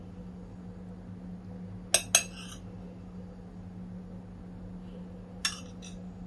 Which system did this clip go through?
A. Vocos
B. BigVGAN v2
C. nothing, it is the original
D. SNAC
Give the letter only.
C